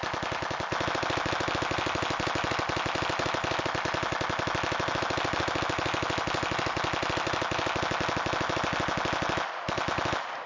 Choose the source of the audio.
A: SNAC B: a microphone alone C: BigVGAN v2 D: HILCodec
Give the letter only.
B